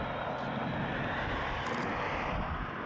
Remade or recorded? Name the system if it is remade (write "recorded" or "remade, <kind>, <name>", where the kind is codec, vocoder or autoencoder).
recorded